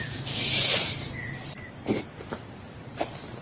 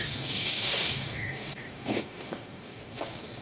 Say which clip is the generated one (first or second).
second